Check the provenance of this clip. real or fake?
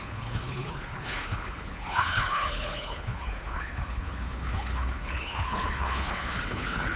fake